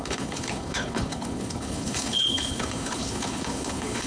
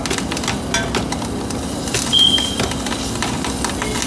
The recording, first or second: second